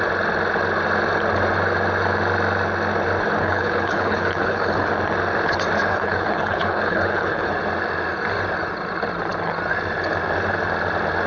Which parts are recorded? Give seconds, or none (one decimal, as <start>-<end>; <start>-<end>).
0.0-3.4; 4.9-5.9; 7.5-11.3